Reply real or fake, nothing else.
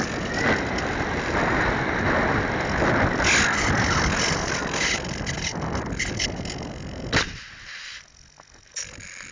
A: real